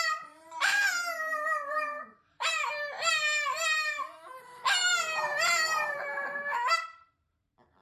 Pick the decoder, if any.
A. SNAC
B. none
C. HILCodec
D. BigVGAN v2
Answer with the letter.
D